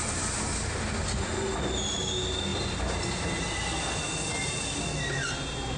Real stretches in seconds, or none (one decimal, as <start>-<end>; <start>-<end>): 0.0-5.8